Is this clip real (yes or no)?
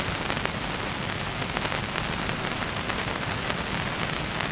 yes